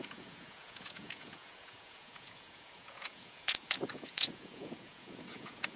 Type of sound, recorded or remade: remade